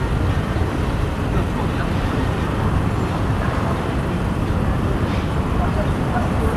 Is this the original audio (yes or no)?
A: no